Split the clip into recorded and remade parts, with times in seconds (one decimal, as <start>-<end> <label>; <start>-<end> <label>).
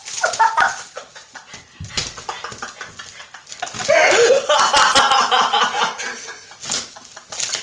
0.0-7.6 recorded